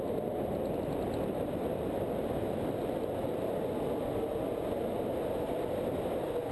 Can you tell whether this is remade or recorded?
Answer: recorded